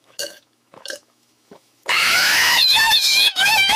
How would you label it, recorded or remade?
remade